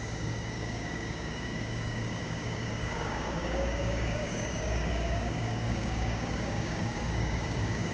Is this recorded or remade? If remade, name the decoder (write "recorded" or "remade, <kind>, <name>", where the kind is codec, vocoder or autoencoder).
remade, codec, DAC